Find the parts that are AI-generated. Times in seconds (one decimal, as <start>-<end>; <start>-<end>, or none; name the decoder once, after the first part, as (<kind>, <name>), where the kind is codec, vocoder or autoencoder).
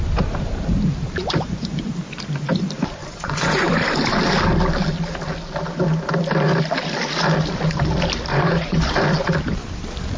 1.2-1.9 (vocoder, Vocos); 3.0-3.7; 8.3-8.9